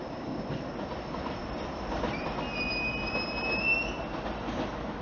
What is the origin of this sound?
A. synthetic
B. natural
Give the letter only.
B